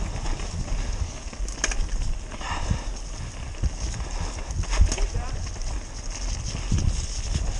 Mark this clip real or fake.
real